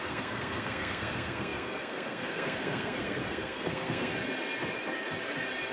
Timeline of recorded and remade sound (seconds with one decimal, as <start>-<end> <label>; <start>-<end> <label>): 0.0-4.1 remade; 4.1-5.7 recorded